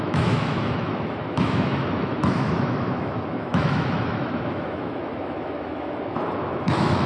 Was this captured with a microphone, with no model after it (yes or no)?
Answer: no